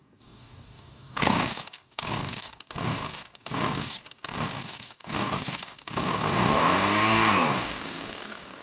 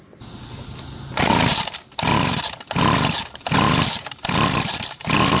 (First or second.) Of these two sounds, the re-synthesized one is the first